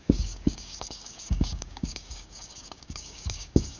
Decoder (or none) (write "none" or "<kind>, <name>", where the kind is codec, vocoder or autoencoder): codec, DAC